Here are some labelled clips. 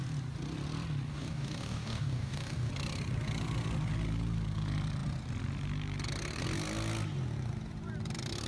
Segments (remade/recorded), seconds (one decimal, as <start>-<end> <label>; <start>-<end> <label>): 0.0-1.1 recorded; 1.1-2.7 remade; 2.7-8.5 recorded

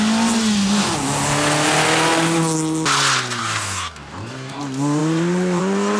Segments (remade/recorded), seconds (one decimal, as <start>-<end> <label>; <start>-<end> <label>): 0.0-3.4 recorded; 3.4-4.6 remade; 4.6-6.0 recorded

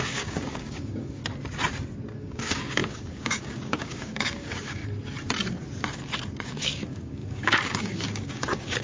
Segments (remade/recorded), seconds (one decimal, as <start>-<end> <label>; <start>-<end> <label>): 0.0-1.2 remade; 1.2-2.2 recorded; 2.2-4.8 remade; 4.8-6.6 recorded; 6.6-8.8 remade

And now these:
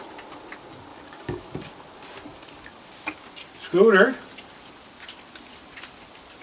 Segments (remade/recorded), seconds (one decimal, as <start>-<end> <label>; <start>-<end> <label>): 0.0-0.9 recorded; 0.9-1.7 remade; 1.7-2.3 recorded; 2.3-2.8 remade; 2.8-6.4 recorded

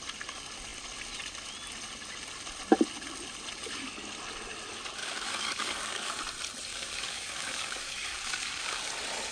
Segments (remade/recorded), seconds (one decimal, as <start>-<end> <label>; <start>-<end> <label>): 0.0-5.0 recorded; 5.0-6.2 remade; 6.2-6.7 recorded; 6.7-8.9 remade; 8.9-9.3 recorded

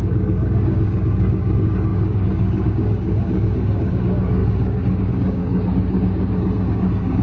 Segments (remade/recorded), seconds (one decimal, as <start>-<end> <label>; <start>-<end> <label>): 0.0-7.2 remade